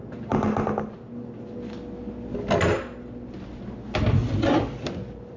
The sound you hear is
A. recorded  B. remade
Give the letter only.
A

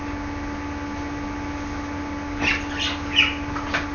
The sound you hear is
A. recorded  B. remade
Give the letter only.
A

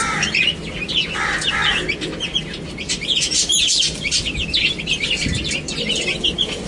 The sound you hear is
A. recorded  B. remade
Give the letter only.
A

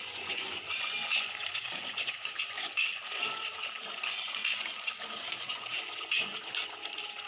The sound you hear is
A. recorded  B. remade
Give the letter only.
B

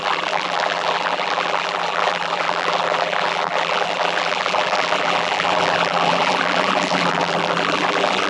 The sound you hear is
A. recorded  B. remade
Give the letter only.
B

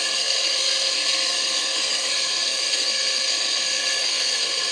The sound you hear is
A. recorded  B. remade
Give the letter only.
B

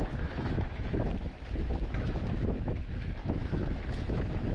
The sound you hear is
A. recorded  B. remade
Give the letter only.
B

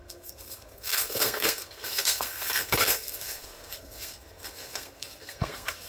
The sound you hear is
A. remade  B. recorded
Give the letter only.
A